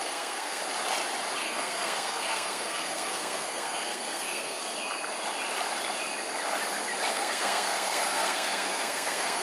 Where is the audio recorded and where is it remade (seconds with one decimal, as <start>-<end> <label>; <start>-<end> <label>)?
0.0-0.6 remade; 0.6-1.4 recorded; 1.4-4.6 remade; 4.6-7.1 recorded; 7.1-9.4 remade